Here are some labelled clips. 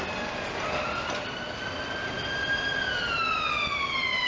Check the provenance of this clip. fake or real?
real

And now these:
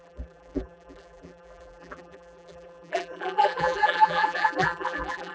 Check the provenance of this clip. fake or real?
fake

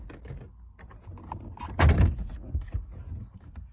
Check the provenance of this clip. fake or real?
real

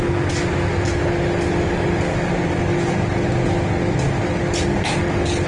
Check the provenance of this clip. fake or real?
real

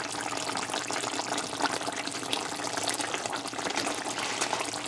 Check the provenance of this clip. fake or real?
real